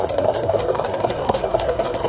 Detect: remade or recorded remade